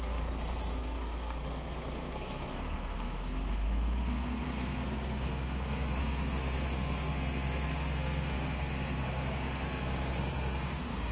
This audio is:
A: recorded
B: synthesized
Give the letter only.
B